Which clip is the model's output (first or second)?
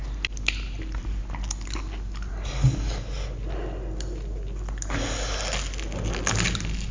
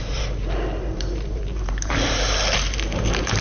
second